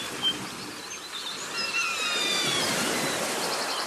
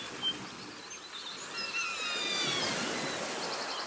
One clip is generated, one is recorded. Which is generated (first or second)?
first